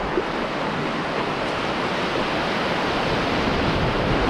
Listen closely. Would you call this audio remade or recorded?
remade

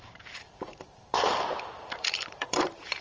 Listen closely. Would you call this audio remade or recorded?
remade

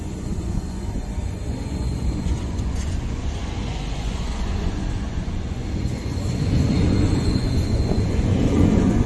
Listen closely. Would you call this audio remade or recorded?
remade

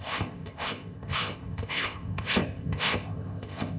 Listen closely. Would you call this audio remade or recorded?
remade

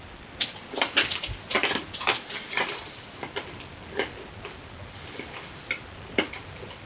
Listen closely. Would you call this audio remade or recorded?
recorded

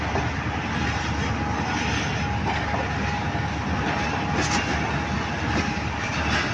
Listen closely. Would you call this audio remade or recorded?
recorded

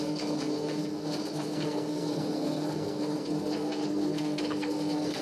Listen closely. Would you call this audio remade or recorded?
remade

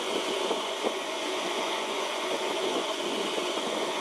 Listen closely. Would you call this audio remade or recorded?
remade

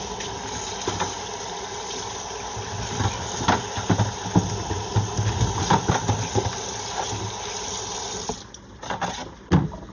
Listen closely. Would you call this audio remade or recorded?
recorded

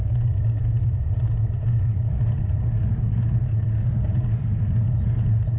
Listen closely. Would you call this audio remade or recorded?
recorded